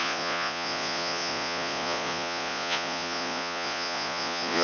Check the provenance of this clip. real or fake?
fake